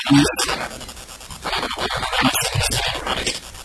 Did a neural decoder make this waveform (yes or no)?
no